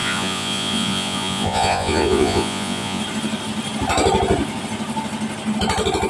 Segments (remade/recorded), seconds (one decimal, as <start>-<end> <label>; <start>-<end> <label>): 0.0-3.0 remade; 3.0-6.1 recorded